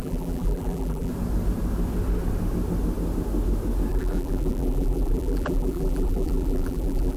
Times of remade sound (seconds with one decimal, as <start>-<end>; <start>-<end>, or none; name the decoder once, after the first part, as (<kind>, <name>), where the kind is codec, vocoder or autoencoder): 0.0-1.1 (vocoder, BigVGAN v2); 3.9-7.2